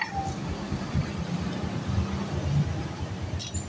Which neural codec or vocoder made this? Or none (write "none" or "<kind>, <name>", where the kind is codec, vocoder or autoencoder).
none